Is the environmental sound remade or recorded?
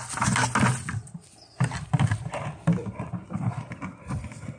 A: recorded